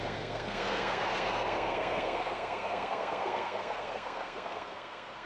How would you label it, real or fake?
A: fake